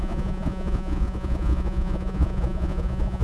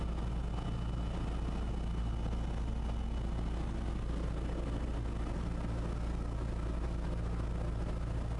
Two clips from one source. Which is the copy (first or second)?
first